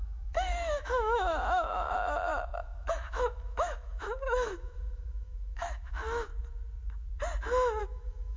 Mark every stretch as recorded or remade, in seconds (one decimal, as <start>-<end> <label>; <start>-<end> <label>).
0.0-6.3 remade; 6.3-7.8 recorded; 7.8-8.4 remade